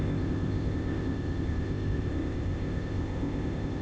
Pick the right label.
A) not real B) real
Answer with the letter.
A